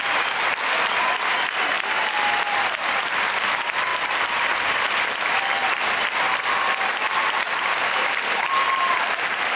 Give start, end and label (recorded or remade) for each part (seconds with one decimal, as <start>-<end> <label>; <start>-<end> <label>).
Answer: 0.0-9.6 recorded